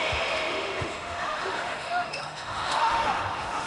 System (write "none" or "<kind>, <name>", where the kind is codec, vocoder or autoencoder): autoencoder, DAC-VAE